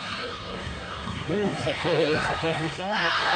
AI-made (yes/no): yes